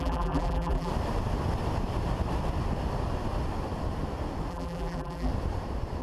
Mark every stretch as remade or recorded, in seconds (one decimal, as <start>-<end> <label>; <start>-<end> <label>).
0.0-0.9 remade; 0.9-4.5 recorded; 4.5-5.3 remade; 5.3-6.0 recorded